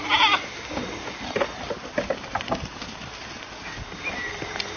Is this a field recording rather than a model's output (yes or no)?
yes